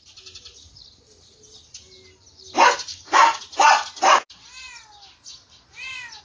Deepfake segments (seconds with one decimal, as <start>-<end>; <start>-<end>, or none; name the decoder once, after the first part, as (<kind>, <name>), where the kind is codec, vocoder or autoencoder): 2.9-3.4 (codec, DAC)